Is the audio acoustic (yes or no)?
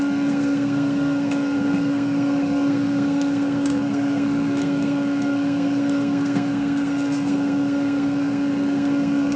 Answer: no